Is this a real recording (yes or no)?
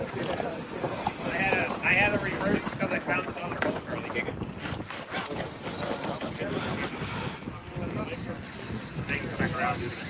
yes